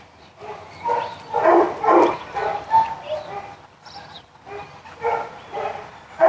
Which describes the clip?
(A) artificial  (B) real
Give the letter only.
A